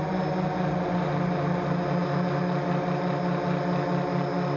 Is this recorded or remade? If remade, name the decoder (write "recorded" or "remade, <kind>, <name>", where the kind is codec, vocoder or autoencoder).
recorded